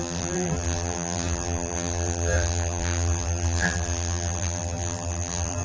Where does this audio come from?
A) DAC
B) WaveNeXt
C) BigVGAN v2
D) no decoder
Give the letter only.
C